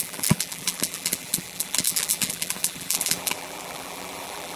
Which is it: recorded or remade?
remade